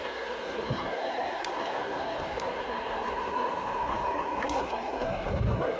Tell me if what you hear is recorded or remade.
remade